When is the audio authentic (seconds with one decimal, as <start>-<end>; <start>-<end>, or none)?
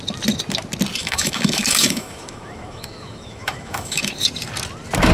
0.0-1.0; 4.1-5.1